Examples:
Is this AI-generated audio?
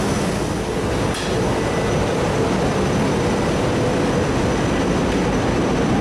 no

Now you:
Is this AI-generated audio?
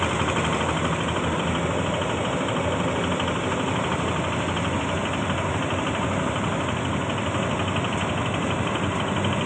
no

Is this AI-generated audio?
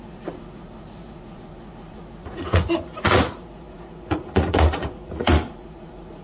yes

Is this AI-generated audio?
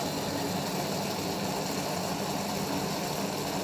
no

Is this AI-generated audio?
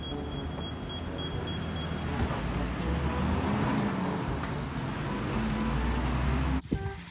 no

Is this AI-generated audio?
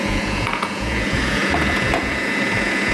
yes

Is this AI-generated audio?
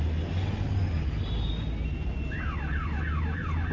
no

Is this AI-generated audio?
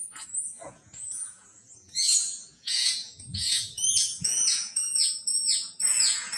yes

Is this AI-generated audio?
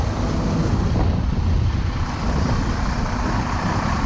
no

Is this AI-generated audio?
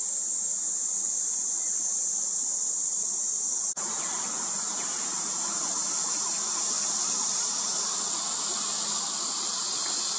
no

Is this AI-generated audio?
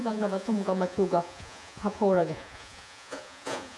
yes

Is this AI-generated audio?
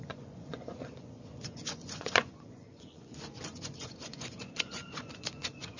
yes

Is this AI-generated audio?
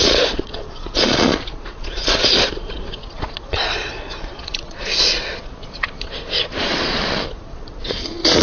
yes